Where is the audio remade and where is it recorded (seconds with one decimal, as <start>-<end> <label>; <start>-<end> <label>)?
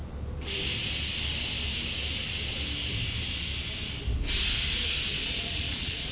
0.0-5.1 recorded; 5.1-6.1 remade